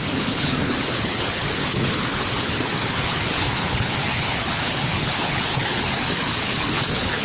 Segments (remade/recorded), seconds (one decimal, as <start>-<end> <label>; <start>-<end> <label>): 0.0-7.2 remade